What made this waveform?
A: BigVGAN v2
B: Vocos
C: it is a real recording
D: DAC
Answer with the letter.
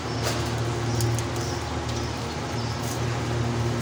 C